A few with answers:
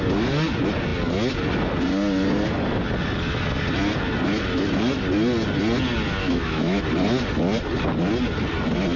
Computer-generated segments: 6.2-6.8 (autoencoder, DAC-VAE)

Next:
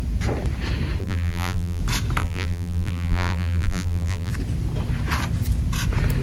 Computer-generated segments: 1.0-1.8 (vocoder, BigVGAN v2); 2.2-4.3

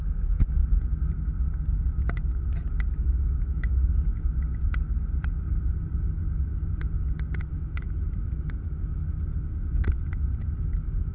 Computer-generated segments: 0.0-0.6 (autoencoder, DAC-VAE); 3.0-4.1; 7.5-9.0; 10.6-11.1

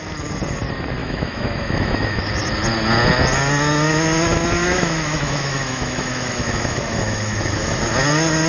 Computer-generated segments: 1.0-2.2 (autoencoder, DAC-VAE); 4.6-7.8